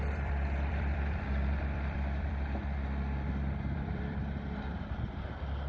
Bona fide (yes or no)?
no